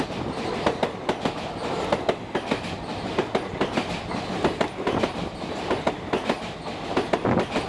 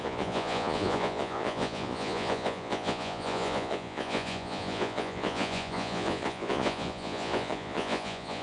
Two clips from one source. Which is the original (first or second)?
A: first